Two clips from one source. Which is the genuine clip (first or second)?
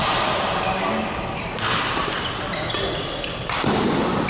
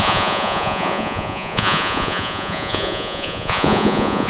first